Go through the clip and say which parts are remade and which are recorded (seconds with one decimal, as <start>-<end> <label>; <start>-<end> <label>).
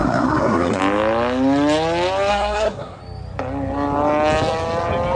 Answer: 0.0-0.8 remade; 0.8-2.3 recorded; 2.3-3.0 remade; 3.0-5.2 recorded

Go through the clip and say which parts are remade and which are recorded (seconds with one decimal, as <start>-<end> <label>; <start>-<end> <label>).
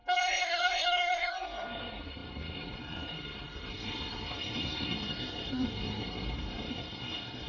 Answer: 0.0-7.5 remade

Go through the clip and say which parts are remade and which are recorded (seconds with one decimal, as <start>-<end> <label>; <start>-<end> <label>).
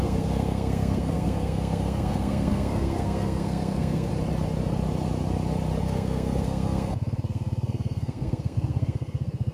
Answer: 0.0-4.1 remade; 4.1-5.8 recorded; 5.8-9.5 remade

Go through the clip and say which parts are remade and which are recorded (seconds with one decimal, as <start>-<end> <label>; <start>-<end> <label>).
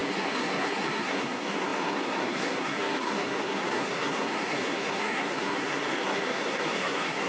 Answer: 0.0-7.3 remade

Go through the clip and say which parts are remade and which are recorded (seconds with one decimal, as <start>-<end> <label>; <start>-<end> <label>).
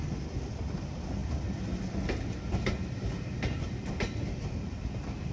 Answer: 0.0-5.3 recorded